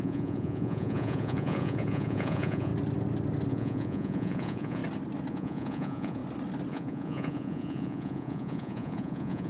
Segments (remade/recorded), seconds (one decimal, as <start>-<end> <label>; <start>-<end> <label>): 0.0-2.7 remade; 2.7-3.5 recorded; 3.5-4.8 remade; 4.8-5.3 recorded; 5.3-6.2 remade; 6.2-6.7 recorded; 6.7-9.5 remade